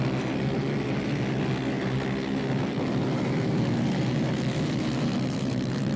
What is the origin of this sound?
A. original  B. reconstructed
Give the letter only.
A